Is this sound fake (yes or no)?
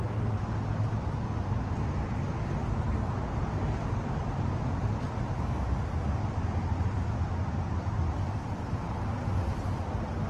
no